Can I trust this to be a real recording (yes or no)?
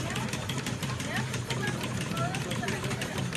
no